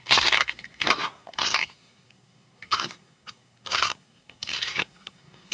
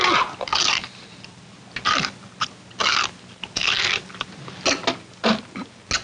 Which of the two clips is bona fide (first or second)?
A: second